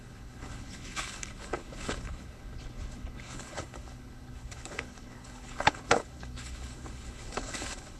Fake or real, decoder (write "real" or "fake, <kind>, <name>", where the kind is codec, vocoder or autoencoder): fake, codec, HILCodec